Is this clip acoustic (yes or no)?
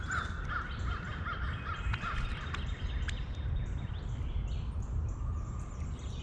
yes